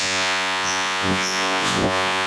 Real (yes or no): no